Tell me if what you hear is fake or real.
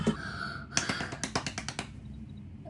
real